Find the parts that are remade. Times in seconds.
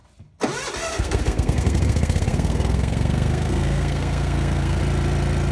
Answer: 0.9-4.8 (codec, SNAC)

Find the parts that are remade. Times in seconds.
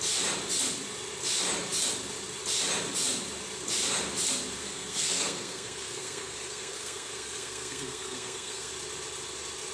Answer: 4.6-8.7 (codec, SNAC)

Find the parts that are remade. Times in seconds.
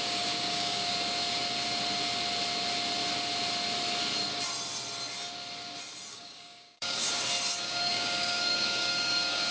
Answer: 0.0-0.9 (codec, DAC); 6.1-7.0; 7.6-9.5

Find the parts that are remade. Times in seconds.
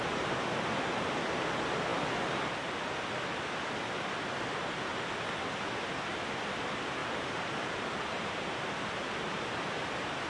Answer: 7.0-8.8 (vocoder, BigVGAN v2)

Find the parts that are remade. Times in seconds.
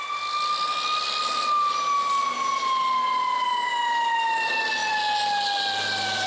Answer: none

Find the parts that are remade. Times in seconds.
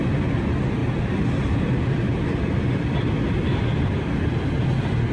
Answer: none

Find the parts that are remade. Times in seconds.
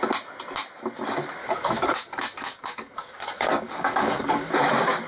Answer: 1.4-4.5 (codec, DAC)